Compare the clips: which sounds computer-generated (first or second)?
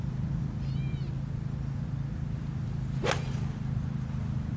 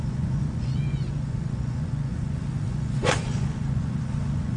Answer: second